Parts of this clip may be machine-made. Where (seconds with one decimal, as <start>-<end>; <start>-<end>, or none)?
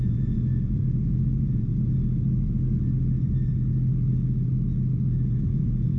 0.0-1.7; 5.3-6.0